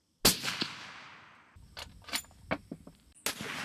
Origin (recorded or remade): recorded